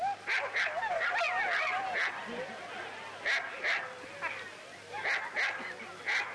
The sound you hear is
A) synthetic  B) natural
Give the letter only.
B